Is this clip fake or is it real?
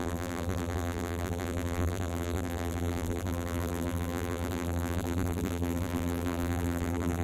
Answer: fake